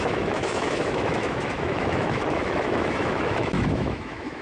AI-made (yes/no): yes